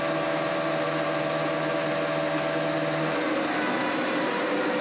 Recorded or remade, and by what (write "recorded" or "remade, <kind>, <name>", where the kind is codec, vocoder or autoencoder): recorded